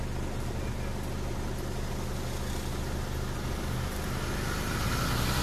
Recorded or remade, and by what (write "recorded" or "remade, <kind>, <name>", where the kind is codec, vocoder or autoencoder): recorded